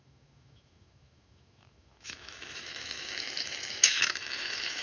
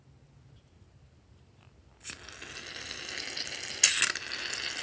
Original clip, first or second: second